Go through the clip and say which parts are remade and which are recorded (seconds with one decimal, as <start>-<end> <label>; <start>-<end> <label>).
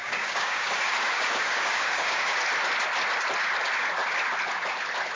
0.0-2.4 remade; 2.4-5.2 recorded